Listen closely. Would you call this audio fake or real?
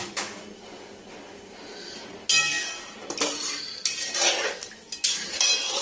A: real